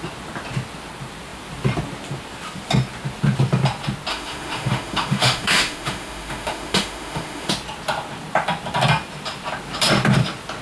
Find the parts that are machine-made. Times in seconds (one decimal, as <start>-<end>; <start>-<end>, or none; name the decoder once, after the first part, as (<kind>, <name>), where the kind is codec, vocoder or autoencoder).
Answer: 4.1-7.5 (autoencoder, DAC-VAE)